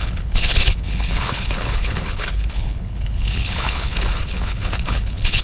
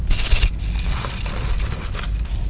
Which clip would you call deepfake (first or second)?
first